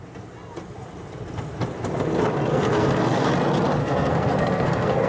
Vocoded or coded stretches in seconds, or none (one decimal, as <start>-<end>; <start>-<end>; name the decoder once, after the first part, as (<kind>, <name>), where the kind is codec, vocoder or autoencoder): 2.5-3.3 (codec, SNAC); 3.8-5.1

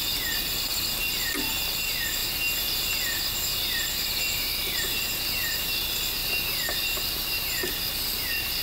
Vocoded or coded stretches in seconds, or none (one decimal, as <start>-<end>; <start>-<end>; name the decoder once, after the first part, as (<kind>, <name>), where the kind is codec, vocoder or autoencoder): 0.7-1.4 (vocoder, BigVGAN v2)

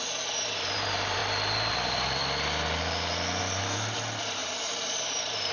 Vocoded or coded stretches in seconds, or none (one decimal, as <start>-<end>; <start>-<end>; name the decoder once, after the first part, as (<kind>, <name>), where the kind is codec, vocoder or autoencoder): 0.0-1.2 (vocoder, BigVGAN v2); 1.7-2.2; 3.4-5.5

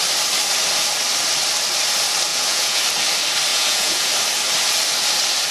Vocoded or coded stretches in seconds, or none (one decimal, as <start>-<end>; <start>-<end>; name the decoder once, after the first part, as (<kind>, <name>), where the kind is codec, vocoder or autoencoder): 2.3-2.8 (vocoder, Vocos); 3.5-4.1